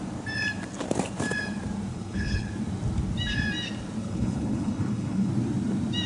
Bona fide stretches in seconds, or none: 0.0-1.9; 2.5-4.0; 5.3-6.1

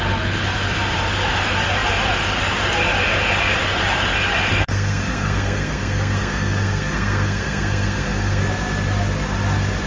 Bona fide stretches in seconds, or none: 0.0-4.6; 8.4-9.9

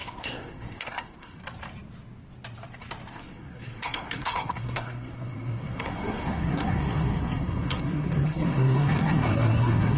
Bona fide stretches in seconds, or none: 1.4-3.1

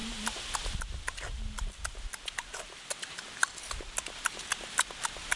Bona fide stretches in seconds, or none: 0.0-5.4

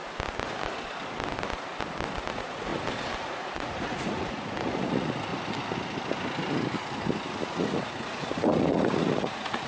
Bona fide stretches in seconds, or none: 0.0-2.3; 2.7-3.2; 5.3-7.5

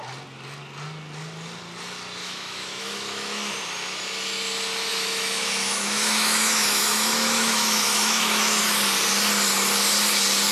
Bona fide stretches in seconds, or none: 0.0-2.2; 3.5-4.9; 8.6-10.5